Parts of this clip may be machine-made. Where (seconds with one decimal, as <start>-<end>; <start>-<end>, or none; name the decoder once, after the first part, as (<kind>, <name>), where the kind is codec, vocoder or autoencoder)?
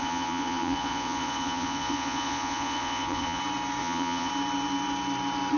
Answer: 0.0-3.4 (vocoder, Vocos); 3.8-4.3